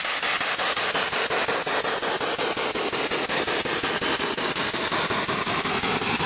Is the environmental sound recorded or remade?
recorded